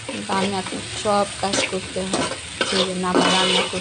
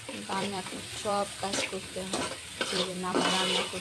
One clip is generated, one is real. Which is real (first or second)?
first